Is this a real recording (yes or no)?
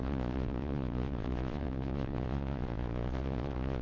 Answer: no